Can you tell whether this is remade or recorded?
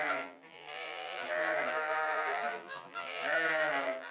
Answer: remade